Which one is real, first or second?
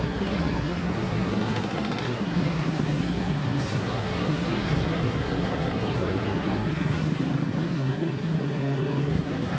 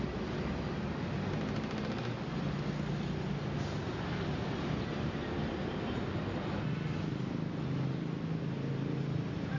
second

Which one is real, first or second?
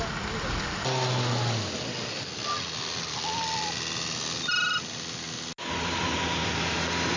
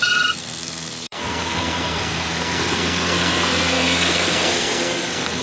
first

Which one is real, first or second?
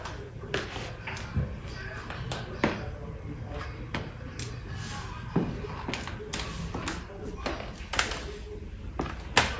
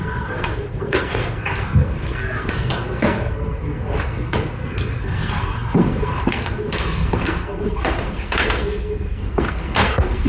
first